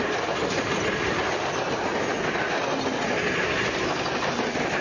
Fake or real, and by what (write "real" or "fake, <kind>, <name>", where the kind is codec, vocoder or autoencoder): real